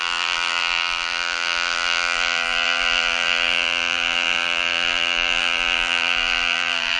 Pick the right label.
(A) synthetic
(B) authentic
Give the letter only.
A